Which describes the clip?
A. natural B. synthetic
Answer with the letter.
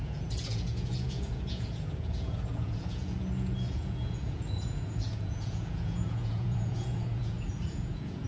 B